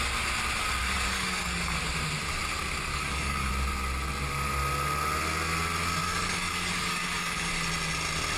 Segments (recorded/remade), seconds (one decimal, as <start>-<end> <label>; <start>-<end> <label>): 0.0-0.8 recorded; 0.8-1.8 remade; 1.8-2.9 recorded; 2.9-3.5 remade; 3.5-6.0 recorded; 6.0-7.5 remade; 7.5-8.4 recorded